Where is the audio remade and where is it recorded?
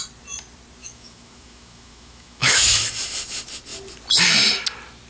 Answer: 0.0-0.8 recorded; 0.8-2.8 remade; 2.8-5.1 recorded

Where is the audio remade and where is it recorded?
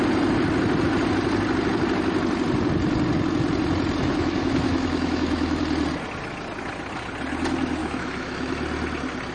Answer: 0.0-4.0 recorded; 4.0-5.6 remade; 5.6-7.8 recorded; 7.8-8.5 remade; 8.5-9.3 recorded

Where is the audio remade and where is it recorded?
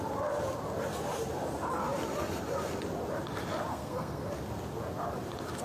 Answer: 0.0-3.7 recorded; 3.7-4.3 remade; 4.3-5.6 recorded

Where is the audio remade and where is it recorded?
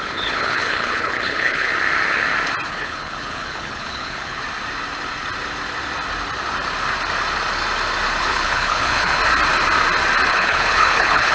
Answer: 0.0-1.7 remade; 1.7-2.7 recorded; 2.7-4.4 remade; 4.4-8.2 recorded; 8.2-9.2 remade; 9.2-10.3 recorded; 10.3-11.3 remade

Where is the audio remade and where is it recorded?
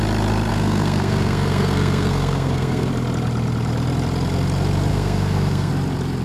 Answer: 0.0-0.5 recorded; 0.5-2.9 remade; 2.9-4.9 recorded; 4.9-5.7 remade; 5.7-6.2 recorded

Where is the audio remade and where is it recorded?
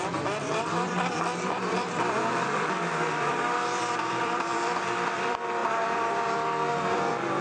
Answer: 0.0-7.4 remade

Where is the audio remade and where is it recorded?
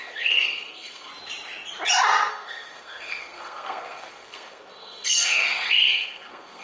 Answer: 0.0-1.1 remade; 1.1-2.3 recorded; 2.3-6.6 remade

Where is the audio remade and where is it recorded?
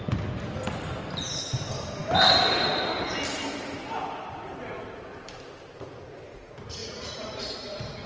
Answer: 0.0-6.8 recorded; 6.8-8.1 remade